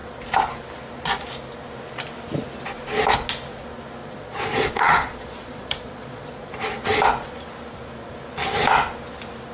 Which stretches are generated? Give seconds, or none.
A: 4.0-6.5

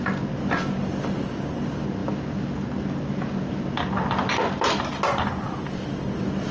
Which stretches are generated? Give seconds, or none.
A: none

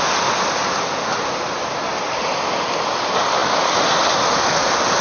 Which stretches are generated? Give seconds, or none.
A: none

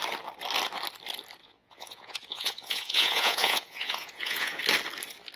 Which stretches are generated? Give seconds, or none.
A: 1.4-4.6

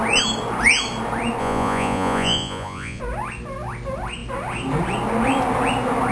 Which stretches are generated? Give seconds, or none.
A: 1.4-3.0

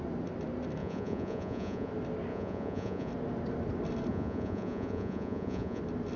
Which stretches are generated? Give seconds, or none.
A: 0.8-1.9; 2.3-3.1; 4.1-5.8

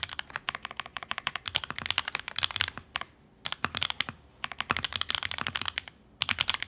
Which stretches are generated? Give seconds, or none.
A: 0.9-1.4

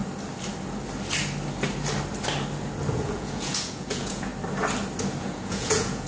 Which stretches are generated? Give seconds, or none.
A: 2.9-4.3; 5.2-6.1